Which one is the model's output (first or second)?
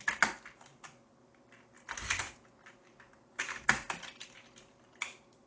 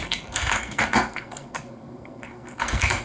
second